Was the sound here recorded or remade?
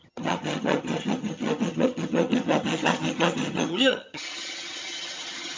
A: remade